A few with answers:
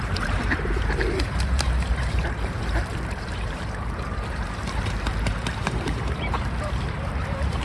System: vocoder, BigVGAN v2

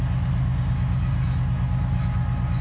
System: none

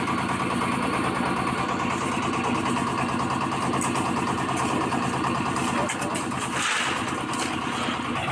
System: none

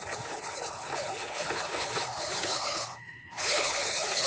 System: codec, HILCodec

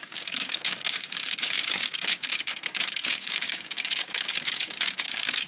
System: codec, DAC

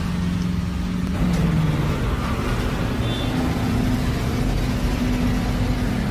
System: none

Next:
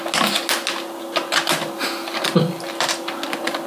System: none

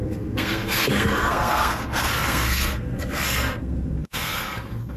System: codec, SNAC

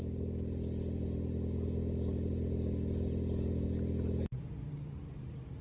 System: none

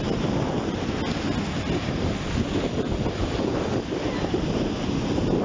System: none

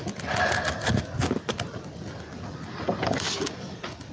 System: none